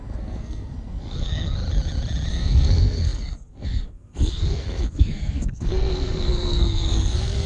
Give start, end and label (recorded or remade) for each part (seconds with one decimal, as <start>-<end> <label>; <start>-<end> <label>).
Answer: 0.0-1.6 remade; 1.6-2.3 recorded; 2.3-7.5 remade